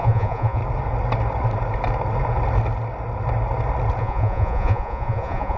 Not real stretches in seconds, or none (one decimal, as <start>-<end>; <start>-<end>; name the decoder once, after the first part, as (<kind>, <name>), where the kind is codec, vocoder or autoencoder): 0.0-0.6 (vocoder, Vocos); 4.0-5.6